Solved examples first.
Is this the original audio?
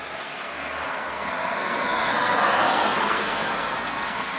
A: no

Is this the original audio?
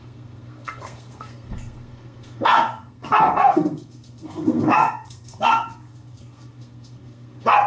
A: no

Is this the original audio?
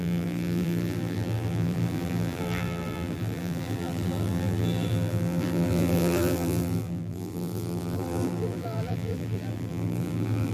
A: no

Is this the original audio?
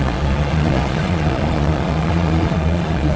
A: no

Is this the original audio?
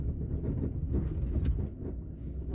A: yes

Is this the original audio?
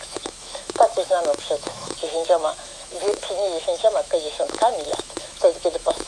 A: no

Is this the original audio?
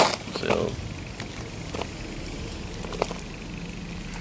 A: yes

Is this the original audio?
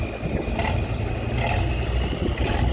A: yes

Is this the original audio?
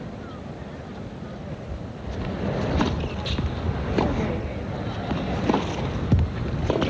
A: yes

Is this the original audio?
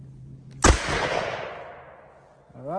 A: yes